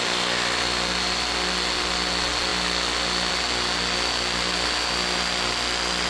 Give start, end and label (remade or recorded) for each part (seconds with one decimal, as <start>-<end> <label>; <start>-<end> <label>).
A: 0.0-6.1 recorded